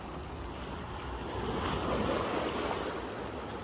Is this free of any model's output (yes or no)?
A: yes